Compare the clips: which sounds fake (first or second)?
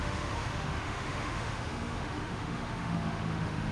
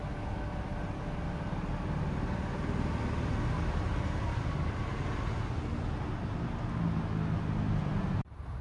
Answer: first